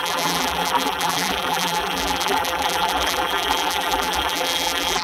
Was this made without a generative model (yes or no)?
no